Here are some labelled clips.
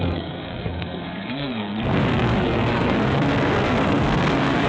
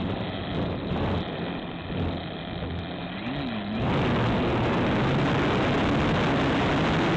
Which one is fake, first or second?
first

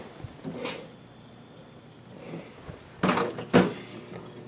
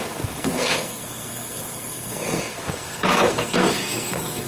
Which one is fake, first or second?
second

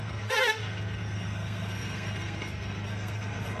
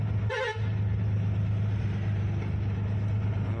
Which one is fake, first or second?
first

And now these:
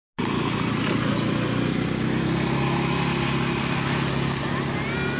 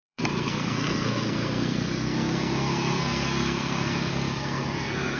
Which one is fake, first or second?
second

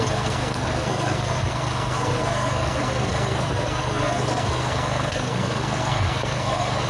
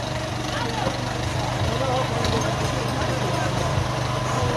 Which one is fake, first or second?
first